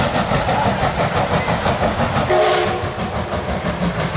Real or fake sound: real